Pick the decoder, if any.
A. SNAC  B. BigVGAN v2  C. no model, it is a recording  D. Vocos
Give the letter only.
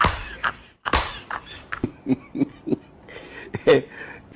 B